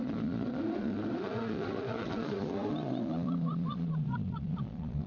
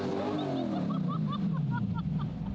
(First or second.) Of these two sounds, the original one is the second